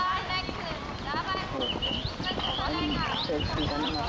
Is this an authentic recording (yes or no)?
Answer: yes